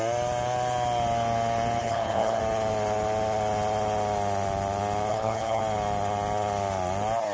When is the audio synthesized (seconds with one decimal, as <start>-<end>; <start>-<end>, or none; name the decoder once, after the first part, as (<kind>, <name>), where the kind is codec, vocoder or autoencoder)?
1.8-2.4 (codec, HILCodec); 5.1-5.6